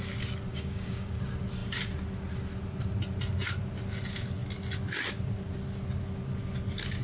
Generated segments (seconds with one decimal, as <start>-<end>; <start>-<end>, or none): 0.5-1.2